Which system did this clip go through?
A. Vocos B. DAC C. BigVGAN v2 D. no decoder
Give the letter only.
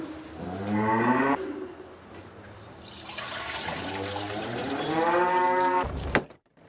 C